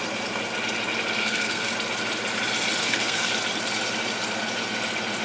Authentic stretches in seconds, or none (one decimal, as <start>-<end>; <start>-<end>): 0.0-1.2; 1.7-2.8; 3.3-5.2